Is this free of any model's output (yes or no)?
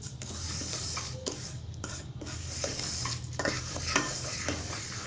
no